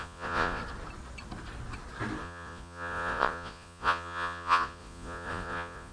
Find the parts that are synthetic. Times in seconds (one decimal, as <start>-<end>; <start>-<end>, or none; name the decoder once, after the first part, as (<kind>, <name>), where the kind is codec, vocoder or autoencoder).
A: 0.0-0.6 (vocoder, Vocos); 2.2-5.9